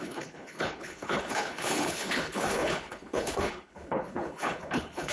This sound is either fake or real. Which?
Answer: fake